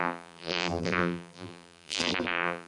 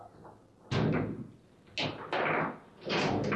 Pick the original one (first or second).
second